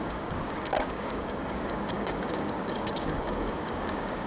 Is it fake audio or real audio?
fake